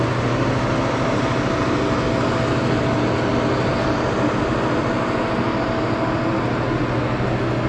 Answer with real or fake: real